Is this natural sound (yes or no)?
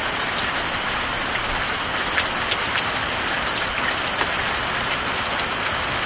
yes